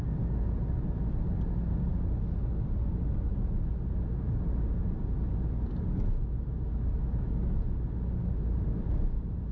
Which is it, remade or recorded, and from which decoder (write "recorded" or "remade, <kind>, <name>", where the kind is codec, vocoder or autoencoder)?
recorded